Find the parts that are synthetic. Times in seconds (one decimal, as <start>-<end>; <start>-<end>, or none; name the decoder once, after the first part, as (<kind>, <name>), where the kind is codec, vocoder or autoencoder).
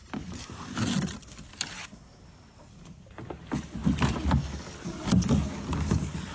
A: none